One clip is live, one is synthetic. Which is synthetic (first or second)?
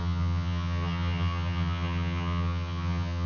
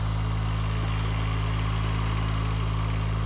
first